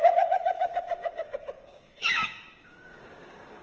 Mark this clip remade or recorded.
remade